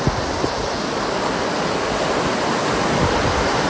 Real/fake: real